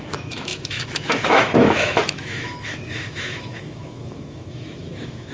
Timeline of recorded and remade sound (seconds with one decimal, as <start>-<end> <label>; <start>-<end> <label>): 0.0-5.3 remade